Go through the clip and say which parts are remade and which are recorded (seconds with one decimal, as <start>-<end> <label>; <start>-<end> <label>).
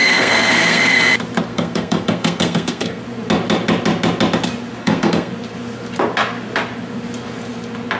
0.0-1.0 remade; 1.0-1.5 recorded; 1.5-3.0 remade; 3.0-4.8 recorded; 4.8-5.3 remade; 5.3-8.0 recorded